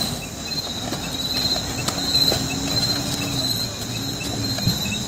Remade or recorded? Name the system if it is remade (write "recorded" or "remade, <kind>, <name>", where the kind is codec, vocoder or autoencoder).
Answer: recorded